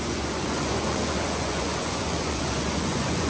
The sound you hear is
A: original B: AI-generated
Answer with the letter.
B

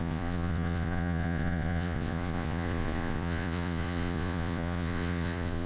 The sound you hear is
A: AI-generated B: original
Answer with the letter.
A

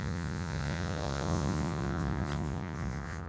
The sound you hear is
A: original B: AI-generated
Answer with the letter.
B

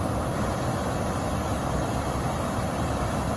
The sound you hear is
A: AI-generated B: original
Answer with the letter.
B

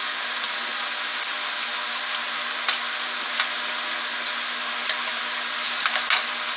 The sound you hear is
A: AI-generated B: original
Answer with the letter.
B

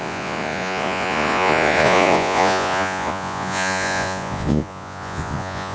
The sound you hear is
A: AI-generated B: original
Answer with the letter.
A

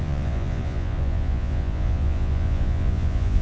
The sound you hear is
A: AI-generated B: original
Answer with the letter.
A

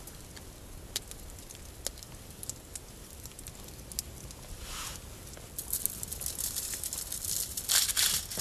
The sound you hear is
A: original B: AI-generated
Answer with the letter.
A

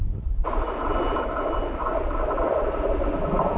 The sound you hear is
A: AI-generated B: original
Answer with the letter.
B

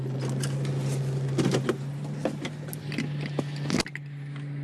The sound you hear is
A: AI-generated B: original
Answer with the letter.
B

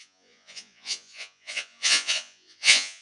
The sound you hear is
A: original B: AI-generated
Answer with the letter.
B